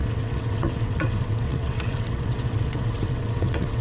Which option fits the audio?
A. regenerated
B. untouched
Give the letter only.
A